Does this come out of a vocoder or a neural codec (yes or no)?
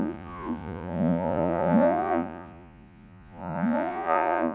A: yes